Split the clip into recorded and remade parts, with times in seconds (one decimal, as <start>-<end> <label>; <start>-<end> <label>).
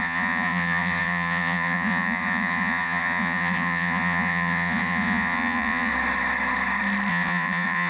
0.0-5.9 remade; 5.9-7.1 recorded; 7.1-7.9 remade